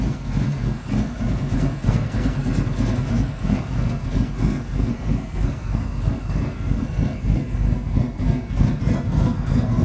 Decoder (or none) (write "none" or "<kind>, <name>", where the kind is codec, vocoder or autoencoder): codec, SNAC